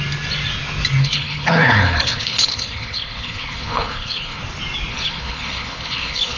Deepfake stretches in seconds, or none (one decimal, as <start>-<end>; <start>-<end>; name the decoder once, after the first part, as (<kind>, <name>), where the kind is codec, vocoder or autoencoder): 1.0-4.4 (codec, HILCodec); 4.9-6.4